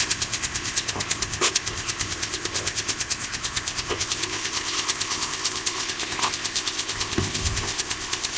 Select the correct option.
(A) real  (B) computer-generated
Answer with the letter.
B